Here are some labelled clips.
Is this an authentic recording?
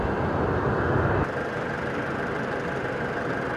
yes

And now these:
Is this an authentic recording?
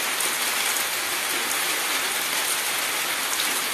yes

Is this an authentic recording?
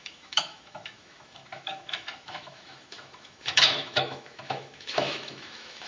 no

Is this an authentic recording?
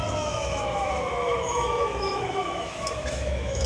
no